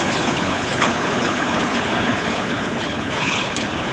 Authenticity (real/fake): fake